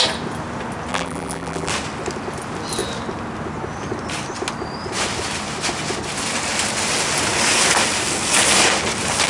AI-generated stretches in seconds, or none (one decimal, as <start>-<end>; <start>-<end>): 0.9-1.7